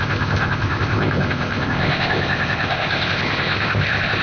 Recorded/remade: remade